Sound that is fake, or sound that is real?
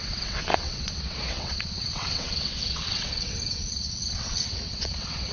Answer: fake